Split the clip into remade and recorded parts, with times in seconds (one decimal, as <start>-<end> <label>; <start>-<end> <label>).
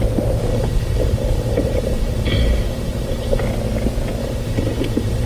0.0-0.5 recorded; 0.5-3.4 remade; 3.4-4.2 recorded; 4.2-5.3 remade